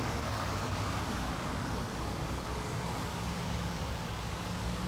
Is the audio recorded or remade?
remade